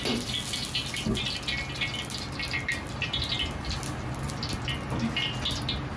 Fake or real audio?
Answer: real